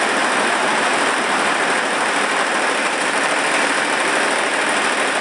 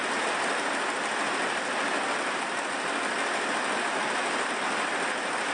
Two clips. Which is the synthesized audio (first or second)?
first